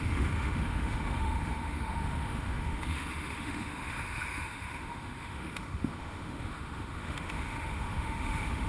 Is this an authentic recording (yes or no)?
no